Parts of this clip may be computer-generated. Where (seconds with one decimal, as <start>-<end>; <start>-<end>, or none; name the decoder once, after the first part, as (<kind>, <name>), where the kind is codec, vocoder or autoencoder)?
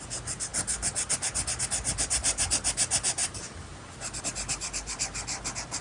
none